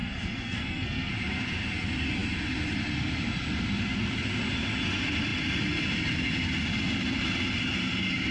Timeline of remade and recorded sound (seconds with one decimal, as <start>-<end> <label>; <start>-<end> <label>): 0.0-1.1 remade; 1.1-8.3 recorded